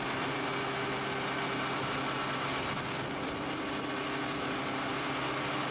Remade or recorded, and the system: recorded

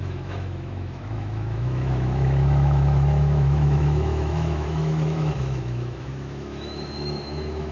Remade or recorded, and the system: remade, autoencoder, DAC-VAE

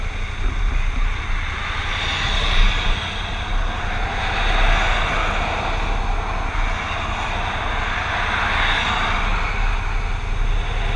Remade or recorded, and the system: recorded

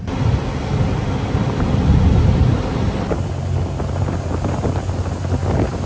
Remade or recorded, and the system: recorded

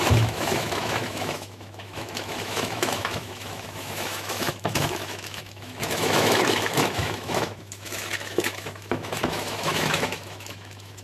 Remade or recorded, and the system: remade, autoencoder, DAC-VAE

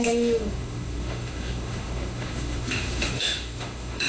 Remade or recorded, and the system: remade, autoencoder, DAC-VAE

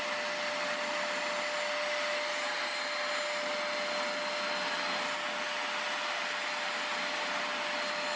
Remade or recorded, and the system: recorded